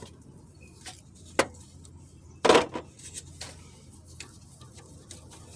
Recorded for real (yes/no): yes